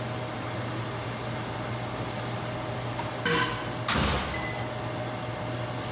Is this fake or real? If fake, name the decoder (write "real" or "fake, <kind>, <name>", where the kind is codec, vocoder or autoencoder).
real